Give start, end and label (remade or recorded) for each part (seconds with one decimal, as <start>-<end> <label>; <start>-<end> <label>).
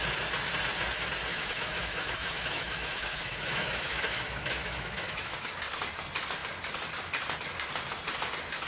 0.0-1.3 recorded; 1.3-5.5 remade; 5.5-8.7 recorded